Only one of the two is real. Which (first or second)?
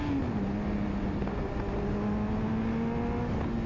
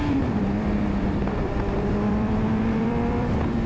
first